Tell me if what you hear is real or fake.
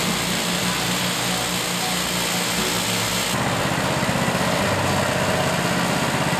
real